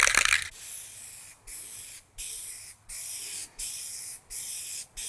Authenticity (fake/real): real